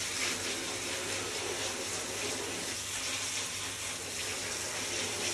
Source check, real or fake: real